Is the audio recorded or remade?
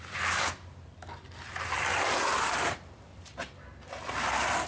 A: recorded